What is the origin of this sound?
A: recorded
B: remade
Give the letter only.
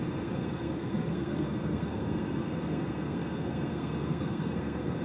B